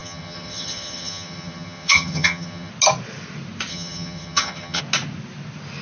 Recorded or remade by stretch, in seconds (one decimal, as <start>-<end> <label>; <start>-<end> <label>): 0.0-2.7 remade; 2.7-3.7 recorded; 3.7-4.8 remade; 4.8-5.8 recorded